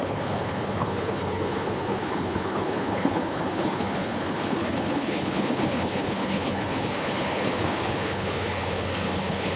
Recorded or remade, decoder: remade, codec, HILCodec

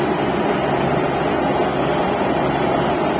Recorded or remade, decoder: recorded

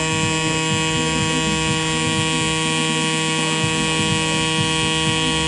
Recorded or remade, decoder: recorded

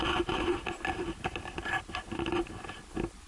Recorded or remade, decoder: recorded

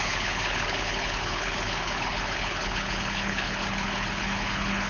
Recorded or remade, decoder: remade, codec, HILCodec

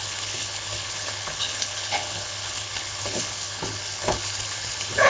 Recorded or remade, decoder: remade, codec, HILCodec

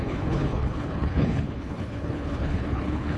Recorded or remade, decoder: remade, codec, HILCodec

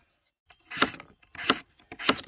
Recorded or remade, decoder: recorded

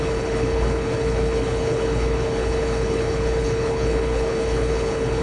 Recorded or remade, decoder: remade, codec, HILCodec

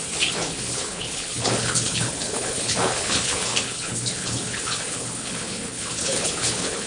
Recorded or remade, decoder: remade, codec, HILCodec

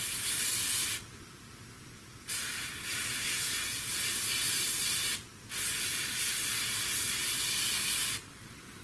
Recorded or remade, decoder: recorded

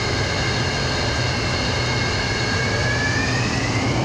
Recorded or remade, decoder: recorded